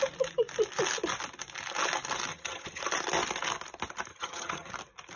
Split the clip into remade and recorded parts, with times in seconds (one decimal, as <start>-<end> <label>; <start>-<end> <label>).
0.0-2.3 recorded; 2.3-2.8 remade; 2.8-4.1 recorded; 4.1-4.7 remade; 4.7-5.2 recorded